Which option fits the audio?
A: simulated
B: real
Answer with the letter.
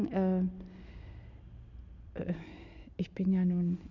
B